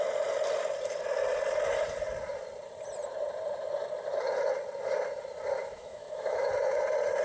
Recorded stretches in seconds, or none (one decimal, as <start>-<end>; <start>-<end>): 0.0-5.6; 6.5-7.2